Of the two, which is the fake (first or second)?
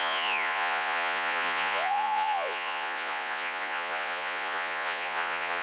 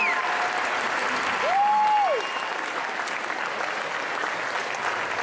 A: first